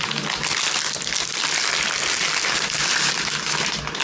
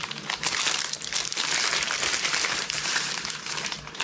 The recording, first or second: first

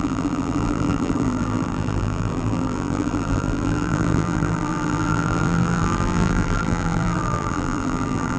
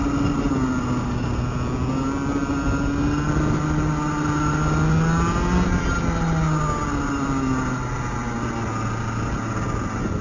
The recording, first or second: second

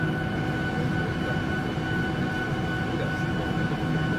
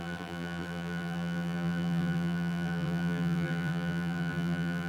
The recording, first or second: first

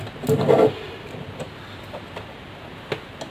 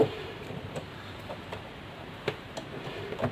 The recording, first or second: first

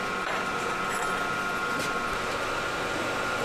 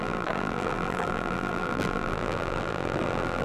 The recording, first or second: first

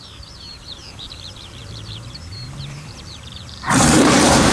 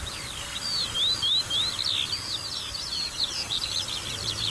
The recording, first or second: second